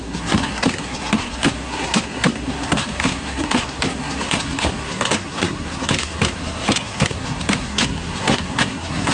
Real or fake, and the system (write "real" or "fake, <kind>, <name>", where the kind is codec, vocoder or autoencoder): fake, codec, SNAC